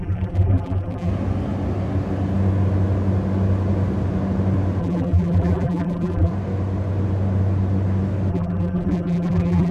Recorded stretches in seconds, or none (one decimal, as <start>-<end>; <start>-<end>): 1.1-4.8; 6.3-8.3

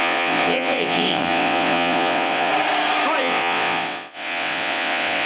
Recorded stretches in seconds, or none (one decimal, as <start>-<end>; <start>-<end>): 2.5-3.2

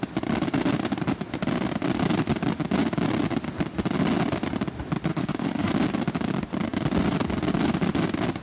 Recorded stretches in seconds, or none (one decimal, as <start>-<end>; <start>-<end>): 0.0-5.1; 5.7-8.4

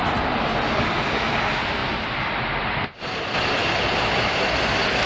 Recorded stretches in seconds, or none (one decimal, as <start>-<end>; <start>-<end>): 0.0-5.1

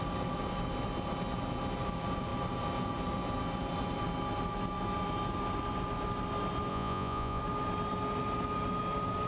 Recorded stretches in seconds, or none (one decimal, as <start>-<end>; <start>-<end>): 0.0-6.7; 7.4-9.3

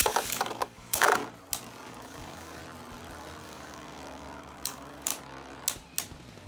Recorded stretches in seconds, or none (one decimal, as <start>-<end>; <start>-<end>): 1.2-1.9; 2.6-3.4; 5.1-6.5

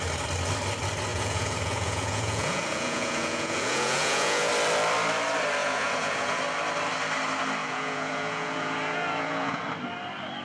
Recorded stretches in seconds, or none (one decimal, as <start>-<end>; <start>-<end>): 0.0-1.1; 4.5-5.6; 6.4-7.6; 9.6-10.4

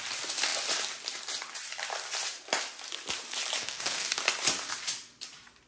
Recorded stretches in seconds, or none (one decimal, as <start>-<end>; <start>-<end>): 0.0-3.6; 4.2-5.7